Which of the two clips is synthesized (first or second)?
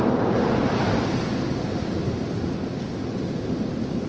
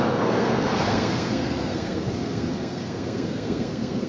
second